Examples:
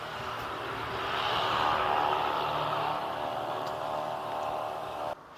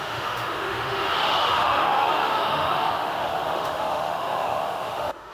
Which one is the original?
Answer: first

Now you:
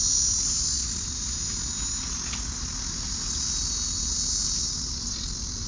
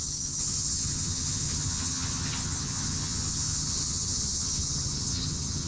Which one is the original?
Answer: first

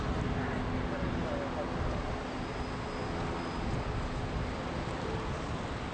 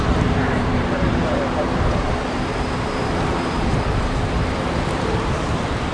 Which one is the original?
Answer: first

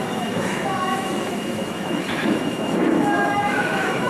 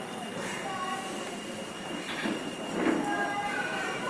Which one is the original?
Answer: second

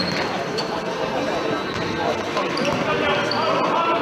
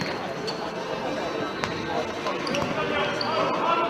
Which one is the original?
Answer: second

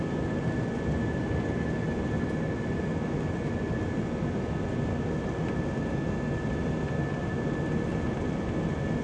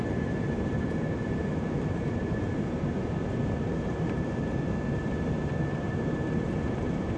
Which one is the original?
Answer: first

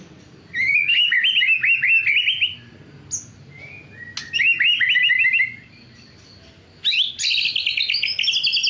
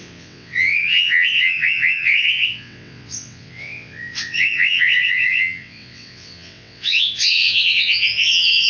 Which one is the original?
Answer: first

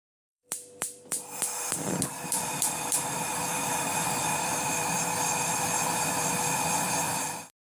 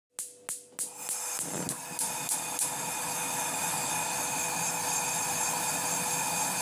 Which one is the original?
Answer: second